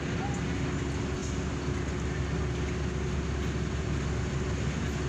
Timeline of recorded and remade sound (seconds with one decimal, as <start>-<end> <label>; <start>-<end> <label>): 0.0-5.1 recorded